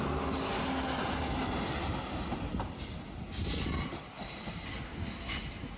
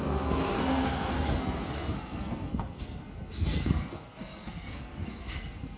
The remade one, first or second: second